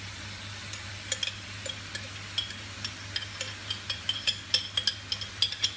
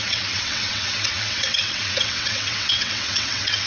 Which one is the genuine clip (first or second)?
first